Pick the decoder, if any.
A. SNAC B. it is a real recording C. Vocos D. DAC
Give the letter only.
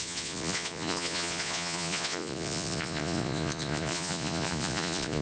C